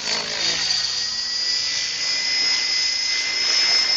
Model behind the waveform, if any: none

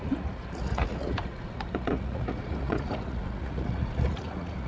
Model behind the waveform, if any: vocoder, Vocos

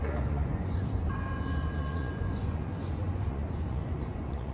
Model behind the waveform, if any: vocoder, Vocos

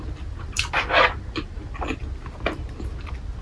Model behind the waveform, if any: none